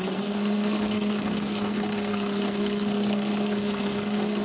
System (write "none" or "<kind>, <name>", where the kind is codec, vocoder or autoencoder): codec, SNAC